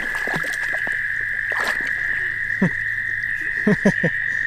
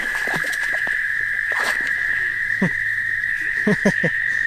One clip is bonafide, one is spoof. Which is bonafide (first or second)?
first